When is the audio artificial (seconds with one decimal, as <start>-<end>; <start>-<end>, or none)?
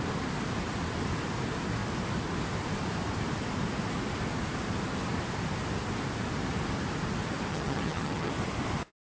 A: 7.5-8.3